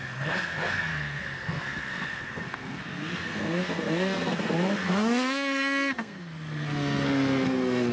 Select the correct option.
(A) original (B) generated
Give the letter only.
B